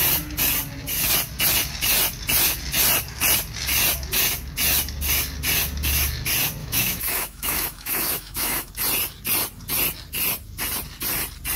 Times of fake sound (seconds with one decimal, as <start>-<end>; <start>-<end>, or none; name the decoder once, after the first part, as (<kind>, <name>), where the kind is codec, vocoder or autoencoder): 6.6-8.7 (autoencoder, DAC-VAE)